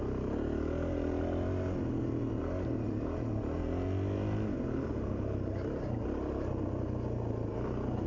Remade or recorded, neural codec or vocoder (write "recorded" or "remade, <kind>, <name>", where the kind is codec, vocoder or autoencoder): recorded